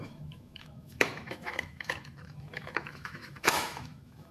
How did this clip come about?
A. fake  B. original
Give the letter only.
A